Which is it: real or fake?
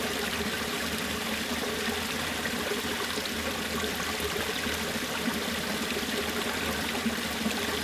real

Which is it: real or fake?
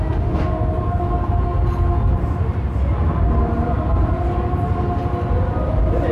real